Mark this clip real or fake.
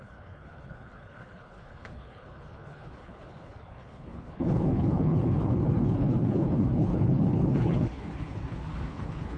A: fake